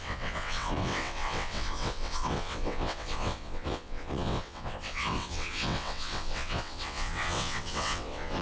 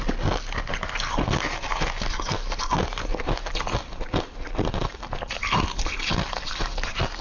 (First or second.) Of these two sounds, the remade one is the first